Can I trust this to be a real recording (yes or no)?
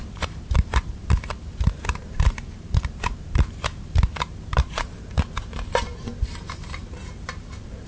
no